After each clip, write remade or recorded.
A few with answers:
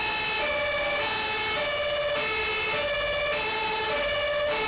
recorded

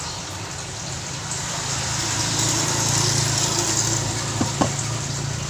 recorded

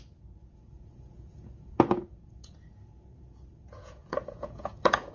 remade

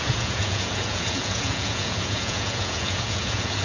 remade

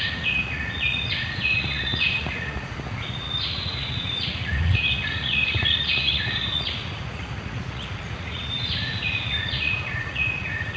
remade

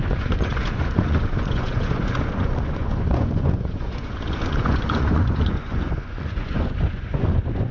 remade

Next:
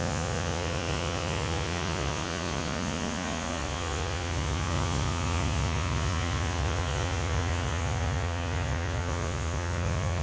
remade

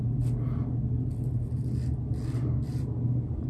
recorded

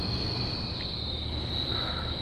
recorded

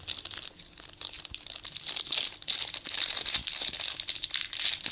recorded